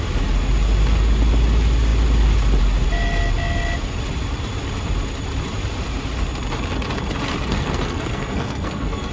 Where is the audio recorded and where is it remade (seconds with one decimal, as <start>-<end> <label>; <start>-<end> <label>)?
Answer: 0.0-7.4 recorded; 7.4-9.1 remade